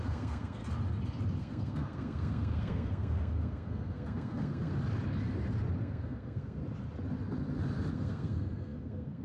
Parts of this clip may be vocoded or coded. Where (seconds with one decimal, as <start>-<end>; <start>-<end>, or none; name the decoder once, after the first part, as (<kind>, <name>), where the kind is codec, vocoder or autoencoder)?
0.0-0.6 (codec, SNAC); 1.4-4.7; 5.8-6.6; 7.9-9.2